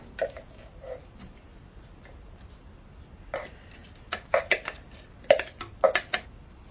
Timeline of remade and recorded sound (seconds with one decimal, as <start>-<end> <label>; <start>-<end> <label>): 0.0-6.7 recorded